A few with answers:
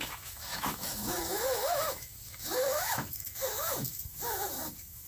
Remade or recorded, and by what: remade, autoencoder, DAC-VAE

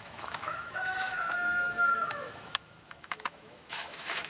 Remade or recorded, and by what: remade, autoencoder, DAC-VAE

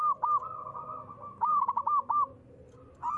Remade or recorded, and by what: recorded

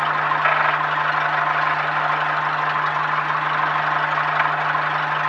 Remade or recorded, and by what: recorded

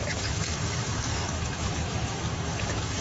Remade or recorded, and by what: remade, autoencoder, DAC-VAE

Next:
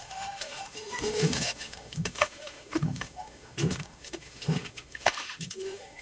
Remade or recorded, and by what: remade, autoencoder, DAC-VAE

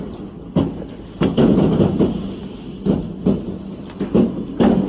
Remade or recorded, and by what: recorded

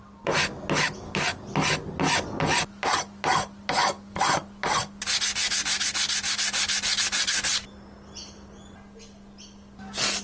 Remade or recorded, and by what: recorded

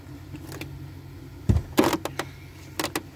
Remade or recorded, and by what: recorded